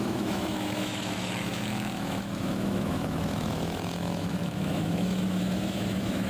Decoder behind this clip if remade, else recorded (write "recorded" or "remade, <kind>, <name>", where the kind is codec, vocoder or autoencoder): remade, autoencoder, DAC-VAE